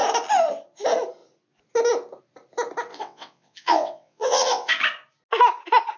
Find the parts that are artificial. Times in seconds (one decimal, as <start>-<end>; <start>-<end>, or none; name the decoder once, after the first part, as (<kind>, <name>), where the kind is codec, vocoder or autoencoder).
2.9-4.7 (vocoder, WaveNeXt)